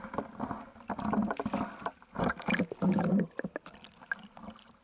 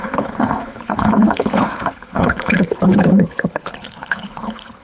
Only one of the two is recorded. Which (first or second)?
first